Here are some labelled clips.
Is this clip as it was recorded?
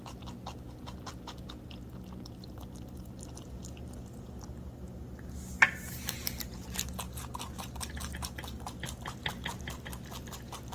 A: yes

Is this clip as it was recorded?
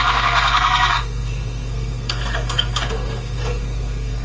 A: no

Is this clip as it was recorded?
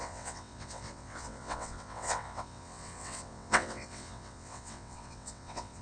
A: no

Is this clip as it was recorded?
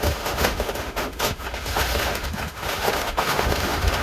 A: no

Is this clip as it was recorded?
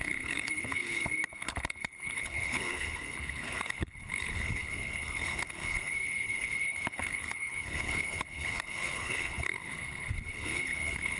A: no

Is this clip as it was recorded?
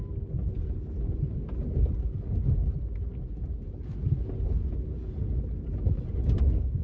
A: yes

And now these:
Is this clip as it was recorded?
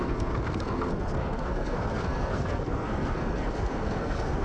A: no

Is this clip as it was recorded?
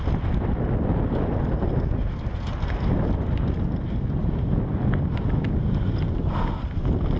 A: yes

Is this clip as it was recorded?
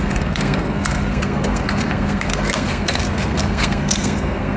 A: no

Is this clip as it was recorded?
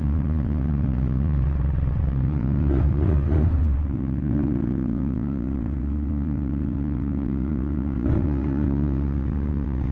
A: no